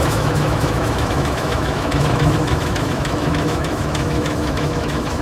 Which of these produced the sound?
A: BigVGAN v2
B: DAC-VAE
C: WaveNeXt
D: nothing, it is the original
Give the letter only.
B